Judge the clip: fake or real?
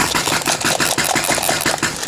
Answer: real